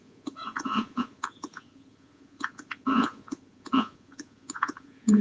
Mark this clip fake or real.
fake